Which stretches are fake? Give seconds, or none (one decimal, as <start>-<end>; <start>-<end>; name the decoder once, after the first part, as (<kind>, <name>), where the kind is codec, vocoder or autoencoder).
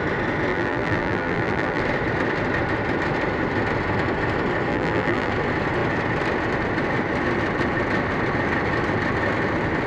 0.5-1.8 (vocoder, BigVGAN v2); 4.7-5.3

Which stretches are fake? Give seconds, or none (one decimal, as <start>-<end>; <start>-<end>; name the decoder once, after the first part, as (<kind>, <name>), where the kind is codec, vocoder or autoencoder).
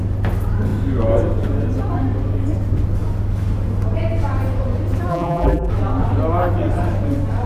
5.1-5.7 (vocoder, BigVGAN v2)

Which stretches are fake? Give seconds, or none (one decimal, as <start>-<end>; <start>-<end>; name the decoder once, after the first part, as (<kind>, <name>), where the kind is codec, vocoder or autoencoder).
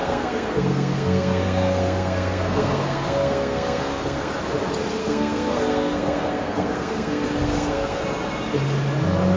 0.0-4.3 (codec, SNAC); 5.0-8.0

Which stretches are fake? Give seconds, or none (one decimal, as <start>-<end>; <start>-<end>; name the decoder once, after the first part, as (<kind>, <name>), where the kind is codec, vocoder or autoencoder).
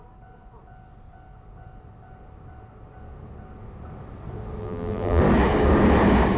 4.6-5.2 (vocoder, BigVGAN v2)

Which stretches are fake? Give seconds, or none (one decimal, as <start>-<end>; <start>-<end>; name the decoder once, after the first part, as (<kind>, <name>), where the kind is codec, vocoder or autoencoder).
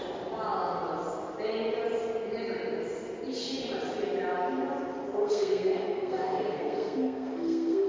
5.2-7.9 (codec, SNAC)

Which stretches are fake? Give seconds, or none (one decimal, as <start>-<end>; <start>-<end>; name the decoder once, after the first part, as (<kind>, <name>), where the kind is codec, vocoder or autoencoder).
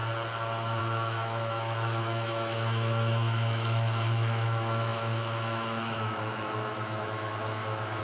0.8-8.0 (autoencoder, DAC-VAE)